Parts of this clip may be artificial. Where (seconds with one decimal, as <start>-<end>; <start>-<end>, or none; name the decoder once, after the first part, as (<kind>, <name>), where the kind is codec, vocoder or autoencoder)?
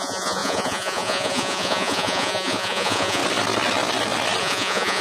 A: 0.0-3.2 (vocoder, Vocos); 4.4-5.0